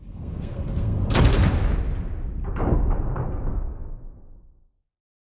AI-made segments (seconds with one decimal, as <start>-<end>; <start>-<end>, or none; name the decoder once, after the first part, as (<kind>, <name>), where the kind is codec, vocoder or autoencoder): 0.0-1.0 (codec, SNAC); 3.5-5.3